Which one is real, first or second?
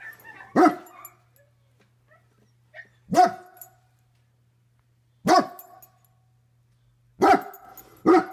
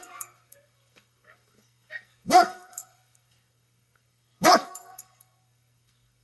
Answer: first